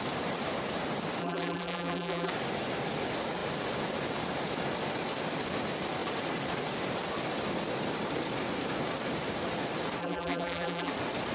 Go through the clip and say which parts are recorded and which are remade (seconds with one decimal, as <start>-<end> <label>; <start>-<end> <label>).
0.0-1.2 recorded; 1.2-2.3 remade; 2.3-10.0 recorded; 10.0-10.9 remade; 10.9-11.3 recorded